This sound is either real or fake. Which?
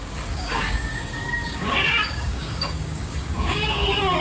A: fake